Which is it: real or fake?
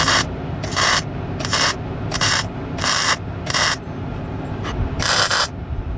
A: fake